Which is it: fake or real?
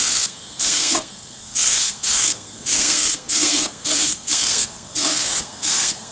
fake